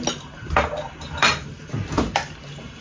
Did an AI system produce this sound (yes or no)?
no